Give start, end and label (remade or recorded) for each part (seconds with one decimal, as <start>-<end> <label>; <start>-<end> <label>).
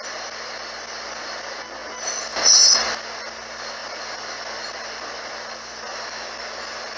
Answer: 0.0-7.0 recorded